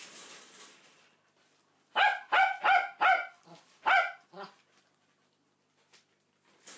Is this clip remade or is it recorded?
recorded